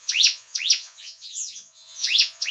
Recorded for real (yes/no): no